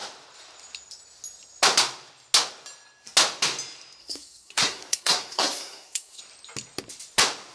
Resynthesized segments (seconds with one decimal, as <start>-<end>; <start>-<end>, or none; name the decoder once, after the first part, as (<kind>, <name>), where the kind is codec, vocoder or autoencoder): 4.0-6.2 (codec, SNAC)